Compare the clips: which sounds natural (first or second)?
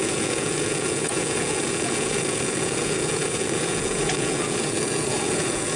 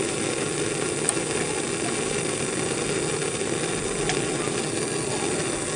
second